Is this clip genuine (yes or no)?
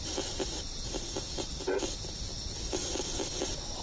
yes